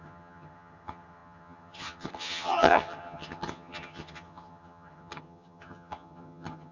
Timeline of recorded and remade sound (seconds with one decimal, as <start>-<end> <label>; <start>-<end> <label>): 0.0-6.7 remade